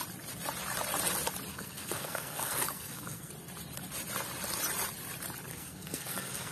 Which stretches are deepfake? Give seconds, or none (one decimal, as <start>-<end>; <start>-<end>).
1.5-3.3; 5.5-6.5